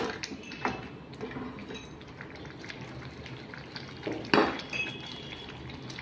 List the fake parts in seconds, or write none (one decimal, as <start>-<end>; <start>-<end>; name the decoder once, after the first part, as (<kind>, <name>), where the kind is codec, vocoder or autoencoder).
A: none